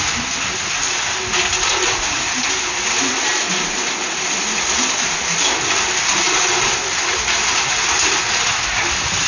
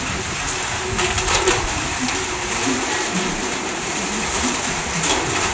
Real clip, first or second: first